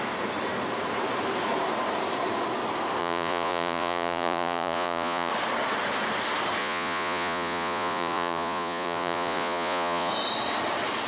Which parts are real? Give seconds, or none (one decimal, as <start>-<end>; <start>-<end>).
0.0-3.0; 5.3-6.6; 10.1-11.1